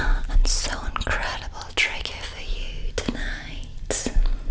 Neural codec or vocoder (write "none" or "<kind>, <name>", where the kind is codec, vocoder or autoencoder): none